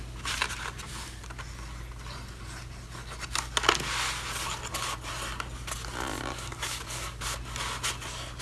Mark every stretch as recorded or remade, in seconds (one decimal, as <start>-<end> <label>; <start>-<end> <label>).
0.0-6.3 recorded; 6.3-7.2 remade; 7.2-8.4 recorded